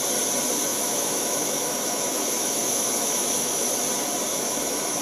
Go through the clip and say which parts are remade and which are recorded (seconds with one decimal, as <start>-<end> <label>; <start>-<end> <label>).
0.0-0.7 recorded; 0.7-3.7 remade; 3.7-4.3 recorded; 4.3-5.0 remade